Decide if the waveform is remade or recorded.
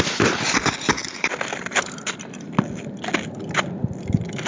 recorded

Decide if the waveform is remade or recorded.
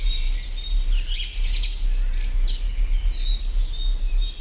recorded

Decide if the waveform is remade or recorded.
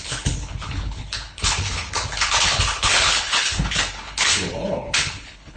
remade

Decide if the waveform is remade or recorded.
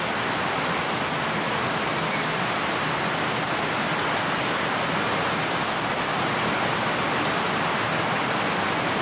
recorded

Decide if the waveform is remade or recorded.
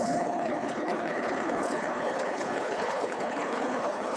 remade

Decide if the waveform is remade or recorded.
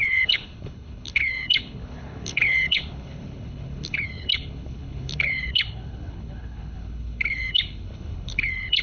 remade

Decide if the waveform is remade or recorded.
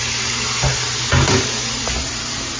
recorded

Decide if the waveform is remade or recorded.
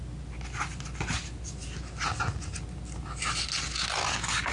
recorded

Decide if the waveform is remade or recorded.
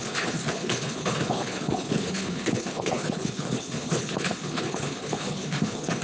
remade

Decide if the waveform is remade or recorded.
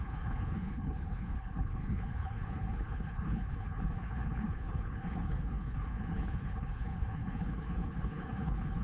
remade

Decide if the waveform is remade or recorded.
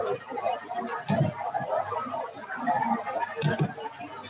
recorded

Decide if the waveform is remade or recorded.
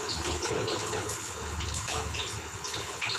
remade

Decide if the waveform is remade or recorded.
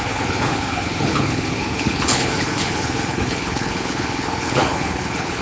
remade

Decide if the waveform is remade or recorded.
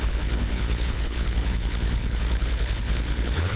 remade